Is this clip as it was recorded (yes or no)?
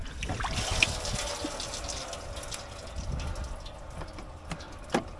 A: yes